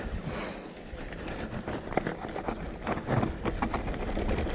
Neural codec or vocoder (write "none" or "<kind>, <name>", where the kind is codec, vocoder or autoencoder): none